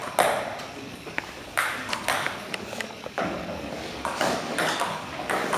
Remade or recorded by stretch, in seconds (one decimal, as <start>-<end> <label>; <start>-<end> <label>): 0.0-0.9 recorded; 0.9-5.6 remade